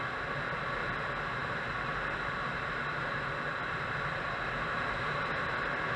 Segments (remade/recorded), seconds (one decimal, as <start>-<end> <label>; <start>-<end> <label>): 0.0-6.0 recorded